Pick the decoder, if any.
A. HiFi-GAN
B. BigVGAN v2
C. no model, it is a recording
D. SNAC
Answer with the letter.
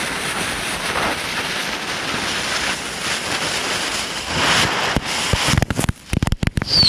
C